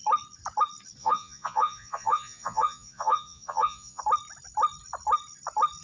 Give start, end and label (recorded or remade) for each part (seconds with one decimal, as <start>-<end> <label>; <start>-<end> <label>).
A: 0.0-1.0 recorded; 1.0-4.0 remade; 4.0-5.8 recorded